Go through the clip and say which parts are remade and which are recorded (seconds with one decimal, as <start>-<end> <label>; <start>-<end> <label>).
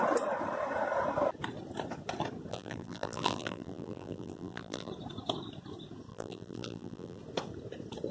0.0-2.5 recorded; 2.5-4.9 remade; 4.9-6.1 recorded; 6.1-7.2 remade; 7.2-8.1 recorded